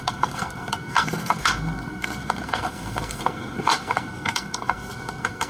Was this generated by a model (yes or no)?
yes